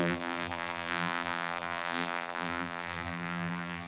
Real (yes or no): no